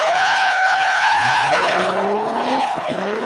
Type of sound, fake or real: fake